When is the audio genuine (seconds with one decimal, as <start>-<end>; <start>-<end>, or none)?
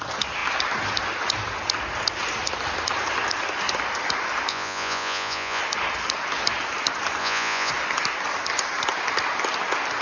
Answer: 0.0-4.5; 5.6-7.2; 7.7-10.0